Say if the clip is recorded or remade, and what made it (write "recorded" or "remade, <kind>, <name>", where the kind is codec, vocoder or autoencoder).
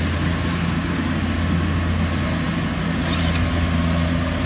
recorded